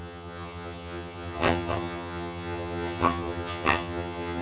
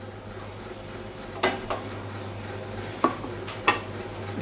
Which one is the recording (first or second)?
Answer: second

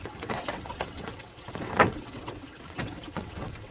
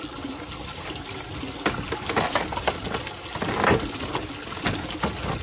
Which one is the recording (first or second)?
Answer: second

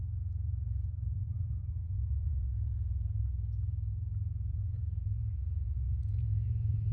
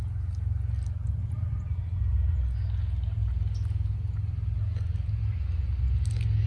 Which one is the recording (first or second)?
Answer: second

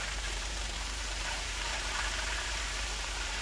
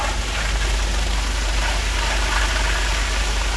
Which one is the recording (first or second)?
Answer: second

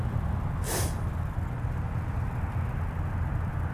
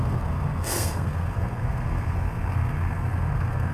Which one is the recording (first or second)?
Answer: first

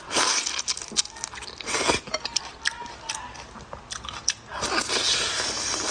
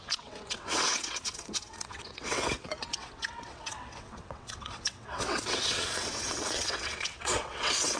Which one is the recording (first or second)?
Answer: first